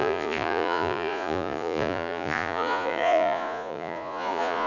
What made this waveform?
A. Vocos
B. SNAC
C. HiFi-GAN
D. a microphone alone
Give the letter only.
A